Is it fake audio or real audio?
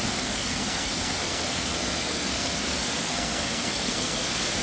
fake